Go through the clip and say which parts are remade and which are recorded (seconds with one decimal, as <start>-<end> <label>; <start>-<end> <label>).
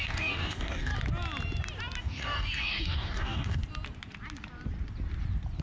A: 0.0-0.9 remade; 0.9-2.0 recorded; 2.0-3.6 remade; 3.6-5.6 recorded